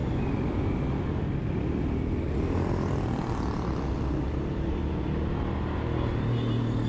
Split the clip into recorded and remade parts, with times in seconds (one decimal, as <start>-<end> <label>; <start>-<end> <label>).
0.0-6.9 recorded